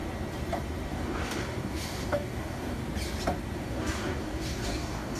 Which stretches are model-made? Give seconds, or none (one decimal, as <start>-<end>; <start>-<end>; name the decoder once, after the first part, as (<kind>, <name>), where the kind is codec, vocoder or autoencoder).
0.9-2.8 (codec, DAC); 3.6-5.2